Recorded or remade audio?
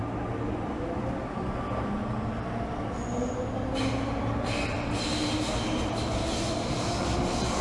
recorded